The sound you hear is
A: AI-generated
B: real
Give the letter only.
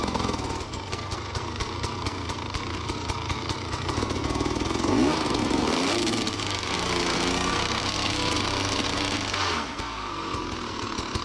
A